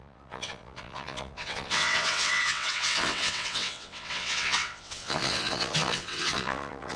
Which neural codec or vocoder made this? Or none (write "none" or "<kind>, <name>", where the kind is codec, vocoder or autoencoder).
vocoder, WaveNeXt